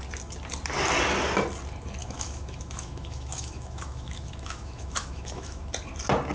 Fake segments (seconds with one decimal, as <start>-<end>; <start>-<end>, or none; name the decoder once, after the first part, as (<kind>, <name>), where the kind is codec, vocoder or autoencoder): 2.0-5.7 (autoencoder, DAC-VAE)